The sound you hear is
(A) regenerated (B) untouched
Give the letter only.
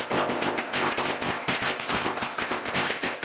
A